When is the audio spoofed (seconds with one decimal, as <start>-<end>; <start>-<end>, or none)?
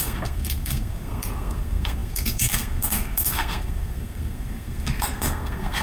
0.0-5.8